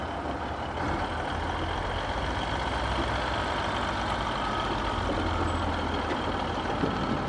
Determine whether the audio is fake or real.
real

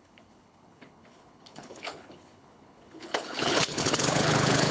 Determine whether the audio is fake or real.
fake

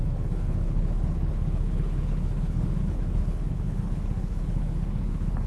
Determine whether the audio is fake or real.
fake